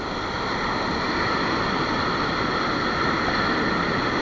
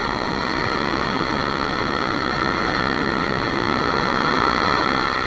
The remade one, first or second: second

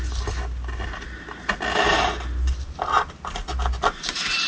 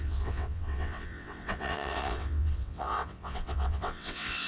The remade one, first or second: second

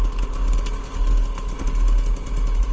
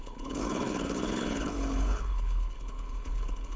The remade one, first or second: second